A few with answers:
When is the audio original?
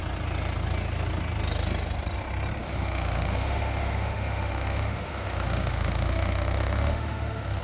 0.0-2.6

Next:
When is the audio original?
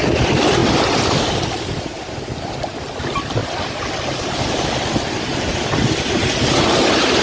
0.0-7.2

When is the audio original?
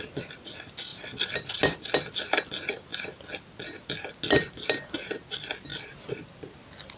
0.0-0.9; 1.5-7.0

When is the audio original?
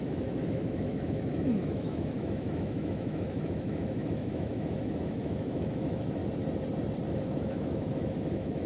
6.2-7.1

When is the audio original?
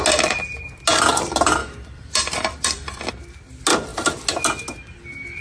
0.0-1.6; 3.1-5.4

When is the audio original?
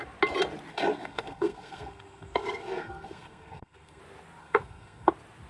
0.0-0.7; 4.0-4.4; 5.1-5.5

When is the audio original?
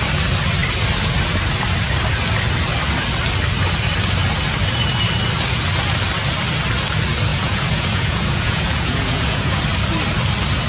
0.0-7.3; 9.6-10.7